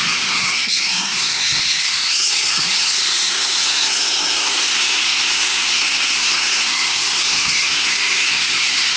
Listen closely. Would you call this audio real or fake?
fake